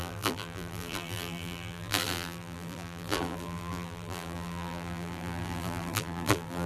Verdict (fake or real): fake